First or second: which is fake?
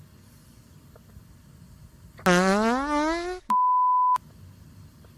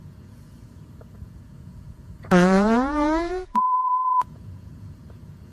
second